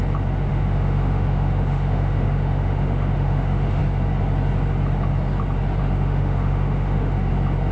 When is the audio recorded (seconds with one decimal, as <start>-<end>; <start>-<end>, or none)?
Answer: 0.0-0.5; 3.8-5.8; 7.3-7.7